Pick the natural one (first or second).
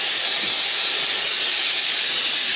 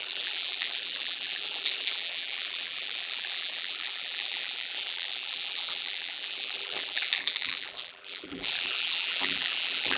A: first